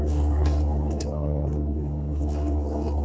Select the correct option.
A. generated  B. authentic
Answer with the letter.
A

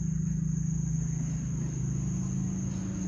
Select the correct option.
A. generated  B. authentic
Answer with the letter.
B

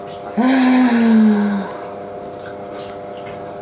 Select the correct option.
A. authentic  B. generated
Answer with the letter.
A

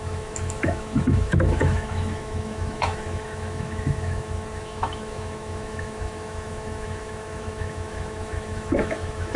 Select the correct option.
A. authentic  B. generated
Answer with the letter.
B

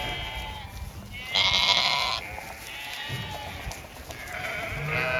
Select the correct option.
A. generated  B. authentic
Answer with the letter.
B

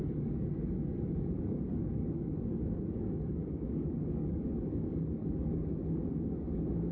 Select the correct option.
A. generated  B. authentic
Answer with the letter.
A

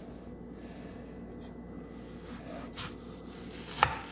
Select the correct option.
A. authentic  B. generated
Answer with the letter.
A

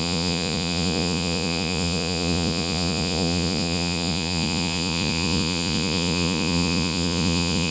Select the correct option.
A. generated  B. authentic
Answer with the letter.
A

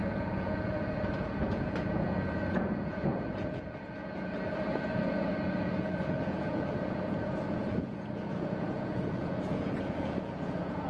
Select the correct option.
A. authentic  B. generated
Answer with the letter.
B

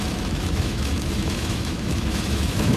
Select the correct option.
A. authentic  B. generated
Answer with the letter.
B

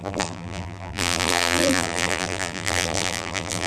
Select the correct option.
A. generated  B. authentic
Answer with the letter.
A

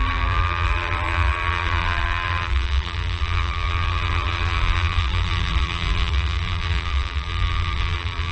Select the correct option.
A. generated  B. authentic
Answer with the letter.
A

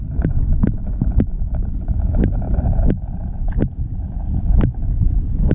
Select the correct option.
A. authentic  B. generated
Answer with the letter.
A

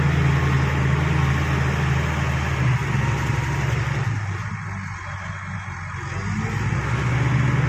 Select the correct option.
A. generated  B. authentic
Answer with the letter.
B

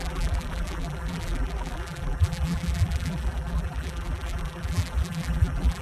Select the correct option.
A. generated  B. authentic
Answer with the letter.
A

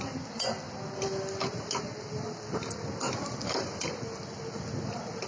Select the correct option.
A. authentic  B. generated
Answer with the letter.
A